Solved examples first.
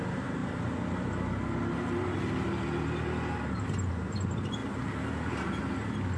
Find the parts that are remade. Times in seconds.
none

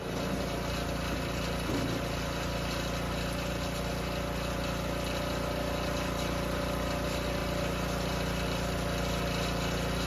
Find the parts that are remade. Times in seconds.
none